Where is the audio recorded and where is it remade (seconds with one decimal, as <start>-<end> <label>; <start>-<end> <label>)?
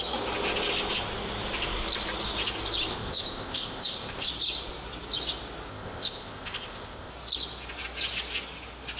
0.0-2.9 recorded; 2.9-4.3 remade; 4.3-5.7 recorded; 5.7-7.1 remade; 7.1-9.0 recorded